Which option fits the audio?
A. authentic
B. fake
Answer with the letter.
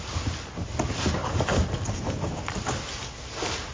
A